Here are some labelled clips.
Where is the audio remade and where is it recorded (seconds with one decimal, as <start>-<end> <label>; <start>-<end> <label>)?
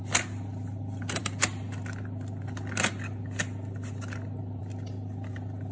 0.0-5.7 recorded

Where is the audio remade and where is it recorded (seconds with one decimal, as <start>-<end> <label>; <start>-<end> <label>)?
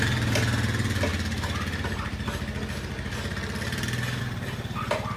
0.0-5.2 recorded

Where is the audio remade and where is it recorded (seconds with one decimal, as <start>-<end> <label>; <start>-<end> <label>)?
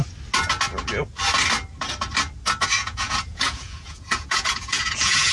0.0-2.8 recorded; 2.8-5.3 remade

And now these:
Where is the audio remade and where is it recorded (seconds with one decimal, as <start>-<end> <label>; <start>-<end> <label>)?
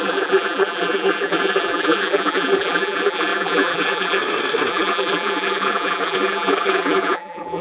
0.0-4.2 remade; 4.2-4.7 recorded; 4.7-7.6 remade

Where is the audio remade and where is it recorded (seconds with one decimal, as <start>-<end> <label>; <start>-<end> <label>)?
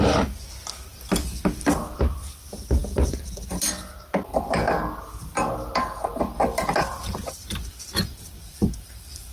0.0-9.3 recorded